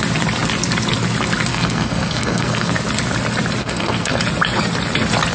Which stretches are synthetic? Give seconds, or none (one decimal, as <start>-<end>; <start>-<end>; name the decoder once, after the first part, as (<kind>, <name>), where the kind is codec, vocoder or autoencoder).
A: 1.5-2.7 (codec, SNAC); 3.6-4.2